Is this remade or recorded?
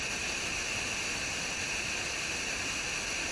recorded